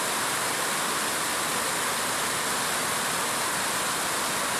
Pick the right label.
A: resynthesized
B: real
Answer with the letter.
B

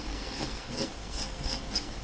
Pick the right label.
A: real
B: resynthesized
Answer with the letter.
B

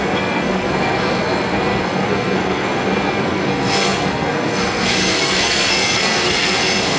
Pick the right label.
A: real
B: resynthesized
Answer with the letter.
B